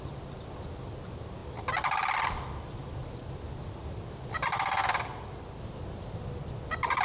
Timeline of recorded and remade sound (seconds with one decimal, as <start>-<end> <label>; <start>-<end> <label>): 0.0-3.0 recorded; 3.0-3.6 remade; 3.6-7.0 recorded